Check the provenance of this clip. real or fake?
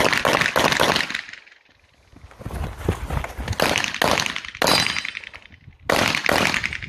real